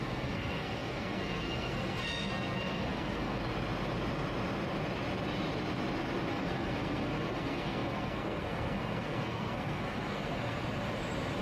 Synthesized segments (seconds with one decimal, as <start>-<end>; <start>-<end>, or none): 0.0-3.4; 6.3-10.6

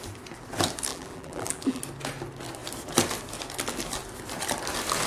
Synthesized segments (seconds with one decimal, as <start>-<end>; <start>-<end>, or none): 0.9-1.8